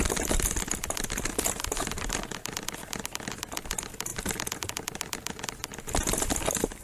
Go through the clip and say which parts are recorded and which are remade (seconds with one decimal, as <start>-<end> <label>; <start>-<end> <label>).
0.0-6.8 recorded